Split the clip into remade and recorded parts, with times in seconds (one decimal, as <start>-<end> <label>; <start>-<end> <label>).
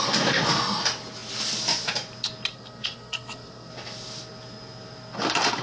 0.0-2.5 recorded; 2.5-3.7 remade; 3.7-5.6 recorded